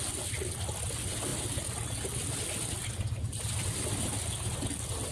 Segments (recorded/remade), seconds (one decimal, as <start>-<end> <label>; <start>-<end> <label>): 0.0-5.1 recorded